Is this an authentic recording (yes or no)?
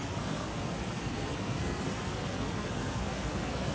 no